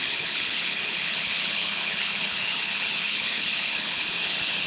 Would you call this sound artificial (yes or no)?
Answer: yes